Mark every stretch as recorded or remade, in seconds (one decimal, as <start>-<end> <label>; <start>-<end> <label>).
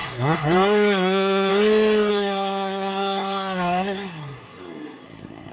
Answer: 0.0-1.5 remade; 1.5-2.1 recorded; 2.1-5.5 remade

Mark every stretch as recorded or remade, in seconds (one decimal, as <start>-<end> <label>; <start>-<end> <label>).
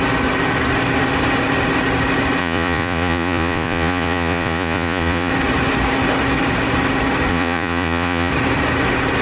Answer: 0.0-2.4 recorded; 2.4-5.3 remade; 5.3-7.3 recorded; 7.3-8.3 remade; 8.3-9.2 recorded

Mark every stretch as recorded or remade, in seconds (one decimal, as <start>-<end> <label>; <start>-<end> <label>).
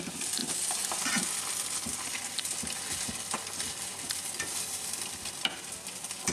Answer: 0.0-6.3 recorded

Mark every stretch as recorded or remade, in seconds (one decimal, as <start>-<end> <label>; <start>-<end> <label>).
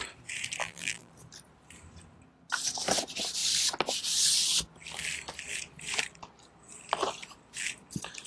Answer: 0.0-0.6 recorded; 0.6-1.1 remade; 1.1-8.3 recorded